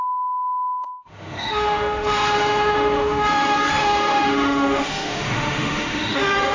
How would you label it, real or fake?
fake